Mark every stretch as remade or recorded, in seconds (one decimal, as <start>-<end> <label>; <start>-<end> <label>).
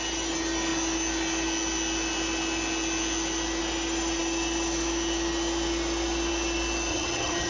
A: 0.0-6.9 recorded; 6.9-7.5 remade